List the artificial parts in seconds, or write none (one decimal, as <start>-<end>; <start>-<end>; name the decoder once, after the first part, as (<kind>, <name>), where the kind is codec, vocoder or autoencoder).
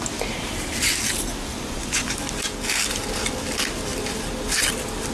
1.5-2.1 (vocoder, Vocos)